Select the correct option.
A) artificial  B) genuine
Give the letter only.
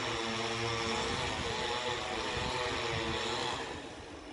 B